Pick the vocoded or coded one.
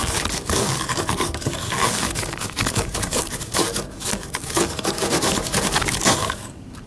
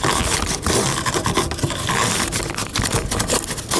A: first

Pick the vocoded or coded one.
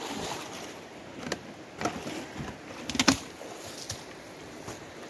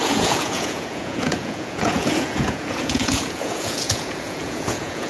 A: second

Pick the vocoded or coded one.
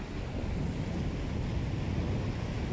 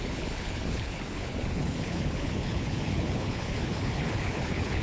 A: second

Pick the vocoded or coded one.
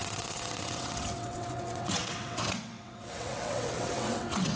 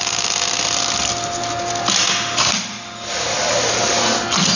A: first